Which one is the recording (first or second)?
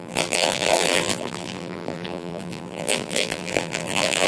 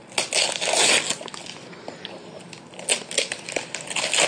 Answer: second